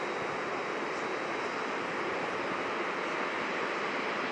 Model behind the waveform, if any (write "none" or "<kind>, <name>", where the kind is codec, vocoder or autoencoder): none